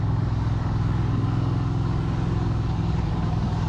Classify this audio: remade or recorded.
remade